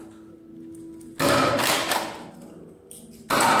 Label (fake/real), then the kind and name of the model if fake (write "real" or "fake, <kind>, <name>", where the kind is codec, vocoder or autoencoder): real